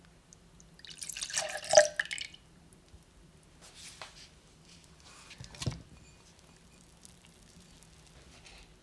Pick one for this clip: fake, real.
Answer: real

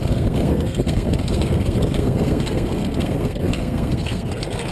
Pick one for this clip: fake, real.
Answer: fake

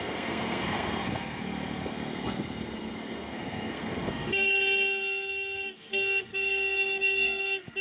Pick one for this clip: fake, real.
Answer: fake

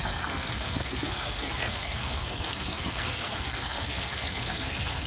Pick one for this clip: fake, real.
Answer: fake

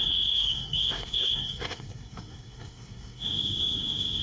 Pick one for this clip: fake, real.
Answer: fake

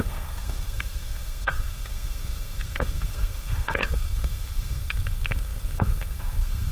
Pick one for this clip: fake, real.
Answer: fake